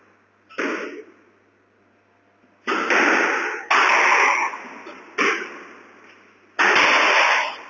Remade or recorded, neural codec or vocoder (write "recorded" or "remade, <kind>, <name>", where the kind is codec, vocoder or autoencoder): recorded